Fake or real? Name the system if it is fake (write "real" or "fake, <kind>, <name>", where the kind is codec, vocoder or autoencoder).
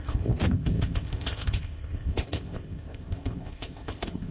fake, codec, ZipCodec